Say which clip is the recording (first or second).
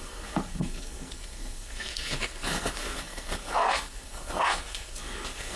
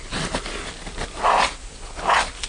second